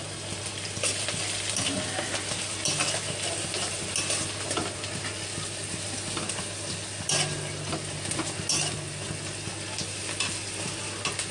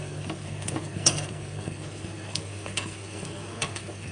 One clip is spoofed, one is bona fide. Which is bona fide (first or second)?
first